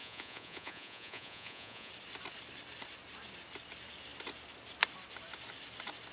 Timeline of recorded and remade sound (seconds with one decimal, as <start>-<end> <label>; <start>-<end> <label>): 0.0-1.9 remade; 1.9-6.1 recorded